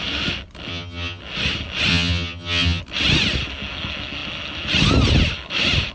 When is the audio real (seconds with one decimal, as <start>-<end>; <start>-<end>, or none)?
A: 0.0-0.7; 1.2-1.9; 2.8-5.9